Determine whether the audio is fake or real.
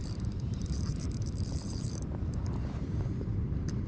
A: fake